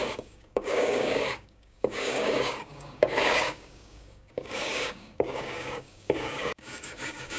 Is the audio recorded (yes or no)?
no